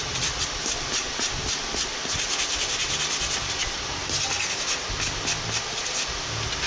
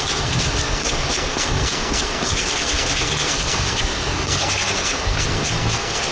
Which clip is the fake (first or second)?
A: second